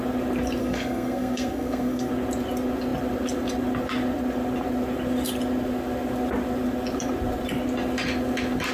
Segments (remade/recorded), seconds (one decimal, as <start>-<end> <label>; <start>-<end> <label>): 0.0-0.6 recorded; 0.6-2.1 remade; 2.1-8.7 recorded